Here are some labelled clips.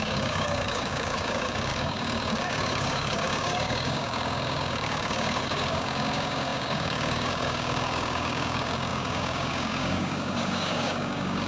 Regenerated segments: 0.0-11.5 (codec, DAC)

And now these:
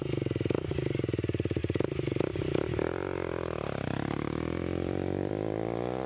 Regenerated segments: 1.6-5.3 (vocoder, BigVGAN v2)

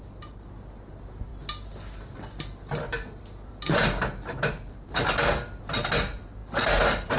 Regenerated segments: none

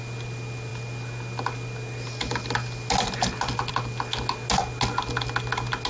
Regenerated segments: none